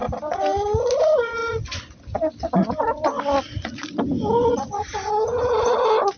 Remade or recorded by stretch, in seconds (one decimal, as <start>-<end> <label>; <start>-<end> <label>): 0.0-6.2 recorded